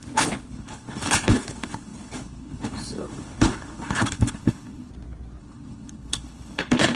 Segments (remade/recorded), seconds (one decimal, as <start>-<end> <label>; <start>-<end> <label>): 0.0-4.9 remade; 4.9-5.4 recorded; 5.4-7.0 remade